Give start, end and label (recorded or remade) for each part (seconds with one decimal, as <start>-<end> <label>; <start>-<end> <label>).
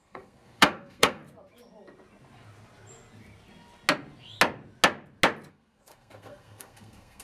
0.0-1.2 remade; 1.2-5.5 recorded; 5.5-7.2 remade